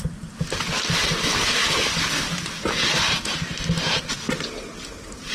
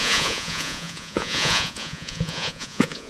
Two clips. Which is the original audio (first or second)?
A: first